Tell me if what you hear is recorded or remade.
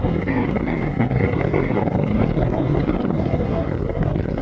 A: remade